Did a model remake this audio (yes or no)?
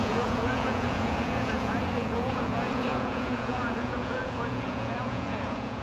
yes